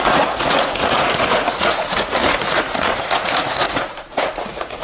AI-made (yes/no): yes